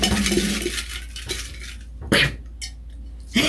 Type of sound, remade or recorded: recorded